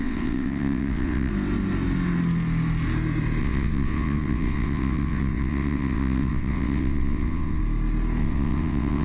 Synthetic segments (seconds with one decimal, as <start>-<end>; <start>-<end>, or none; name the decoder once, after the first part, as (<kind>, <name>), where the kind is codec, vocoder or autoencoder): 0.0-1.3 (vocoder, WaveNeXt); 3.4-7.6; 8.2-9.0